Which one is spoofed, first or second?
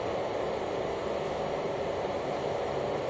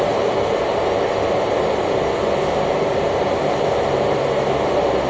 first